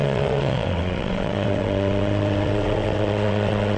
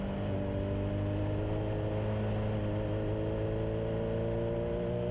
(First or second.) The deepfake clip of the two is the first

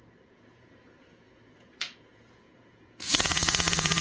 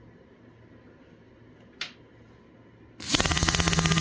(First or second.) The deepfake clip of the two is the first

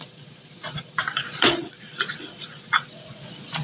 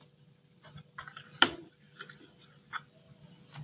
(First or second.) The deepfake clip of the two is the first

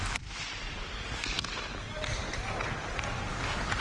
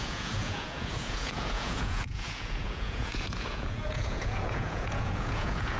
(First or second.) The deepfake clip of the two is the second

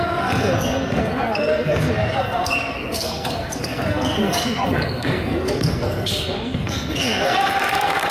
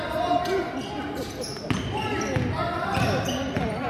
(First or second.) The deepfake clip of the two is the first